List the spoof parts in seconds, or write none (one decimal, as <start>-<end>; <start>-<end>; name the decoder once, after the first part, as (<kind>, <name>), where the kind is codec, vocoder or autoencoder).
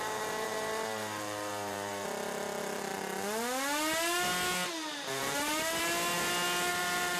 0.0-2.9 (vocoder, BigVGAN v2); 4.7-5.8; 6.7-7.2